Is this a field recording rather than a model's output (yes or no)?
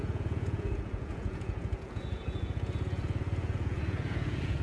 no